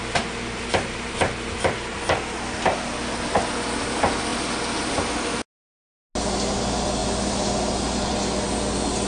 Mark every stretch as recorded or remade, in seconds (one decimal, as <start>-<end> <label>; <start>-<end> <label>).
0.0-9.1 recorded